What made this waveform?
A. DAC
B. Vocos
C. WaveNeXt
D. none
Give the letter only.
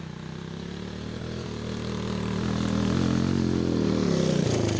D